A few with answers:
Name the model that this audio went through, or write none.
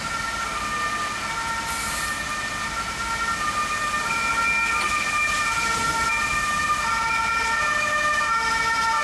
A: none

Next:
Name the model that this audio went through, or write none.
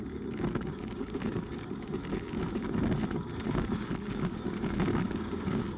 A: codec, DAC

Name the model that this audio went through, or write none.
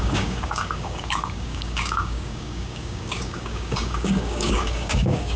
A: codec, DAC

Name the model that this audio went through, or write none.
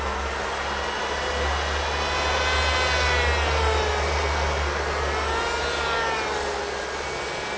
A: none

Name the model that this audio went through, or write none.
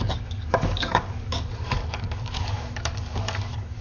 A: codec, DAC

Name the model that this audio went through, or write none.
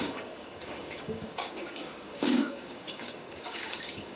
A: codec, DAC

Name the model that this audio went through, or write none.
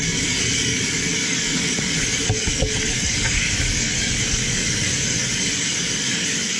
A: codec, DAC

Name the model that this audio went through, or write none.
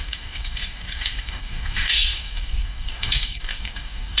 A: codec, DAC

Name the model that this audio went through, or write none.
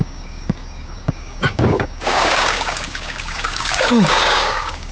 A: codec, DAC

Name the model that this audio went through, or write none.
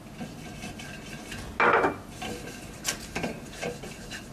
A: none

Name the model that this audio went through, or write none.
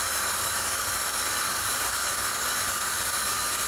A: codec, DAC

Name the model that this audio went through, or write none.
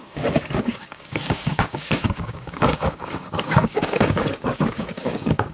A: codec, DAC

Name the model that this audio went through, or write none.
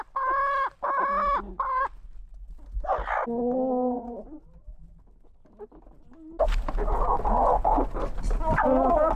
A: none